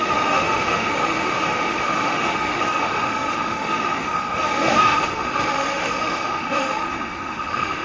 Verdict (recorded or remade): remade